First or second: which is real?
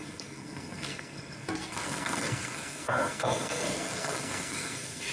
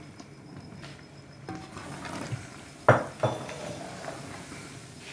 second